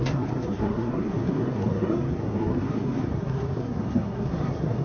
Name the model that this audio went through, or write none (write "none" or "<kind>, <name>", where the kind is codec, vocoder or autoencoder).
codec, SNAC